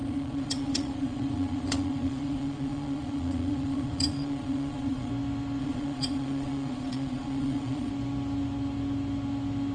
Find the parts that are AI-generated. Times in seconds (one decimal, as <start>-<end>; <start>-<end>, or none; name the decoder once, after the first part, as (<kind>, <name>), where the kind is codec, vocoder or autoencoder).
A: 0.0-5.1 (vocoder, Vocos); 5.6-7.9